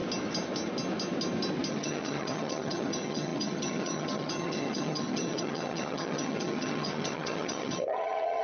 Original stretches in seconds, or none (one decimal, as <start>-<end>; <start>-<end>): 0.0-1.7